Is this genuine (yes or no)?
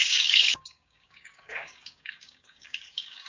no